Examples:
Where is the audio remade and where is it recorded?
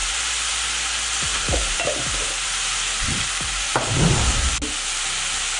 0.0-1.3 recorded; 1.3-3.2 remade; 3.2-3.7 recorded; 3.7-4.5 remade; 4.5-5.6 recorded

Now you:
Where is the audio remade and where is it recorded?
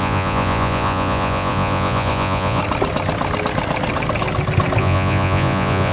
0.0-2.6 remade; 2.6-4.8 recorded; 4.8-5.9 remade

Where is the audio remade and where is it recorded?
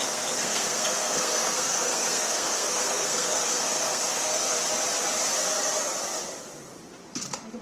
0.0-4.6 remade; 4.6-7.6 recorded